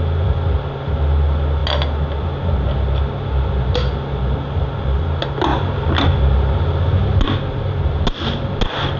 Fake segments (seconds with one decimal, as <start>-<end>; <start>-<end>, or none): none